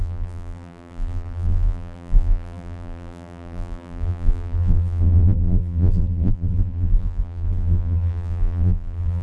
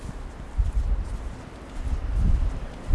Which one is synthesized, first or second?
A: first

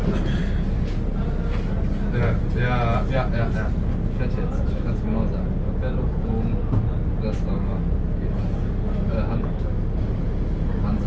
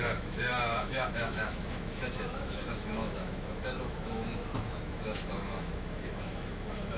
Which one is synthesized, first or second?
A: second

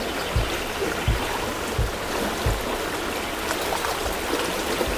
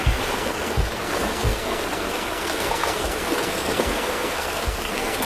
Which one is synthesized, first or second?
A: second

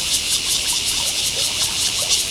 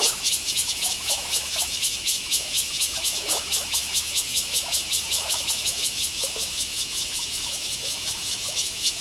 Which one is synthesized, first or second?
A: second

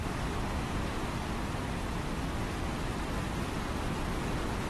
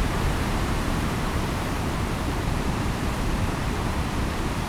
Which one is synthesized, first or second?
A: second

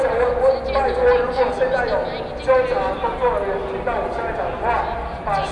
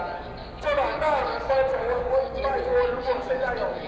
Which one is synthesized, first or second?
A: second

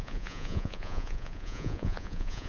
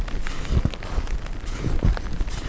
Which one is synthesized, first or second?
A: first